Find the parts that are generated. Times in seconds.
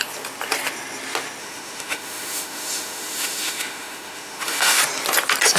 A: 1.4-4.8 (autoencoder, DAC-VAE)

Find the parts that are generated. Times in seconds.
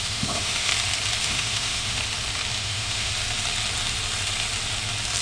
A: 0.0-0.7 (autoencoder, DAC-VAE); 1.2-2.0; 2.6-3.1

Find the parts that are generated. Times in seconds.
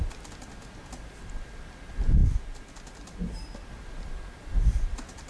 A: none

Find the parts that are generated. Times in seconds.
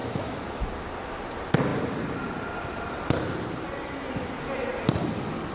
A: 0.0-0.7 (autoencoder, DAC-VAE)